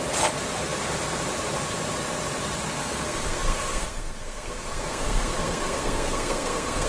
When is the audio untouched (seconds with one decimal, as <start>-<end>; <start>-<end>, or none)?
0.0-2.8

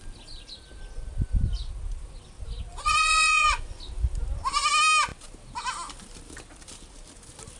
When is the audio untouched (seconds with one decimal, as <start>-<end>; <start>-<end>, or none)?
0.0-2.7; 3.8-7.6

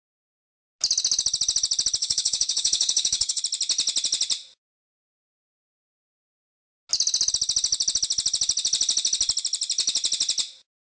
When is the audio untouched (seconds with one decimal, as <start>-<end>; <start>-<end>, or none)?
0.0-2.0; 3.4-10.9

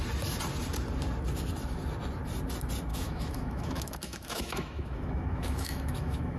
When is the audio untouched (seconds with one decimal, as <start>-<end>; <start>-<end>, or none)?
0.0-2.9

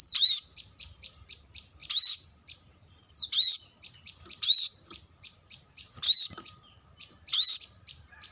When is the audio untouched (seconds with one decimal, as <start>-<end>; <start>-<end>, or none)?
none

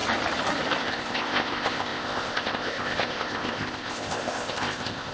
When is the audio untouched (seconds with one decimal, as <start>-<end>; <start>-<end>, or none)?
0.0-0.8

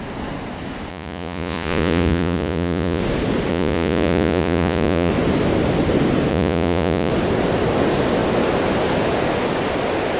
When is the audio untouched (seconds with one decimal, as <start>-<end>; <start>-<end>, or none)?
0.0-0.9; 3.0-3.5; 5.1-6.3; 7.1-10.2